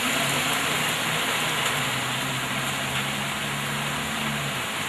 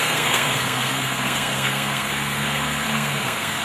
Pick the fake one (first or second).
second